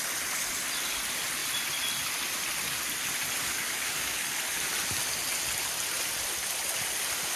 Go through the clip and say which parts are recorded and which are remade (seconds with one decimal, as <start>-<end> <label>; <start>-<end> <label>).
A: 0.0-3.4 recorded; 3.4-4.3 remade; 4.3-7.4 recorded